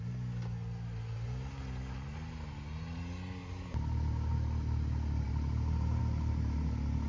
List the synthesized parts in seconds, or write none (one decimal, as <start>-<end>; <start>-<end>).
none